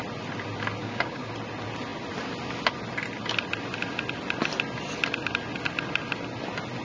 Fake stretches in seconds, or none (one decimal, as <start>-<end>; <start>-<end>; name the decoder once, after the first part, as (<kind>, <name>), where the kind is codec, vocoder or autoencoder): 0.8-1.3 (codec, DAC)